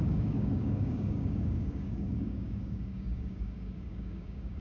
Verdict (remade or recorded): remade